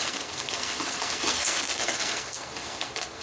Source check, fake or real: fake